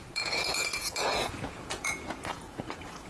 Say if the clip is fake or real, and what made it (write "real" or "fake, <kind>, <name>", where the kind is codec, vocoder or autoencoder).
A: fake, vocoder, Vocos